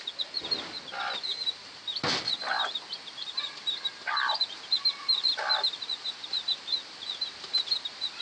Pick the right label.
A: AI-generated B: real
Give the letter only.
B